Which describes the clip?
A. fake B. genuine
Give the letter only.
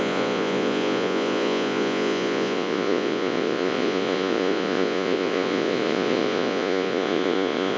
A